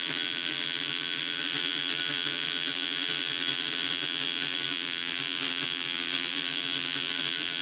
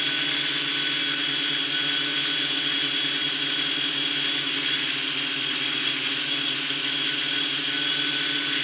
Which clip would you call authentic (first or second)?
second